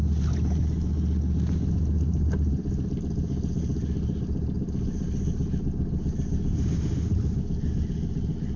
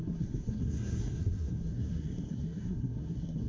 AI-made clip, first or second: second